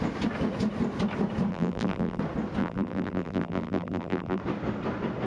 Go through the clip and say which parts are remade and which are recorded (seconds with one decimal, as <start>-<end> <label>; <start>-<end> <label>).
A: 0.0-1.5 recorded; 1.5-2.2 remade; 2.2-2.6 recorded; 2.6-4.4 remade; 4.4-5.3 recorded